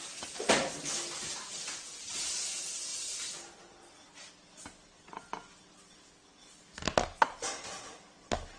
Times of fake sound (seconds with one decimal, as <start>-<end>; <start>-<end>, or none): none

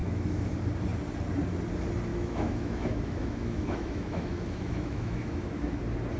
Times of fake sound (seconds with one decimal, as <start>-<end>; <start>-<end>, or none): 0.0-0.5; 2.1-5.8

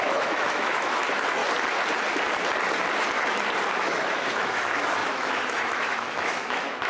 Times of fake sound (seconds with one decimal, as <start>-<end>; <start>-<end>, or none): 0.0-1.4; 3.8-6.9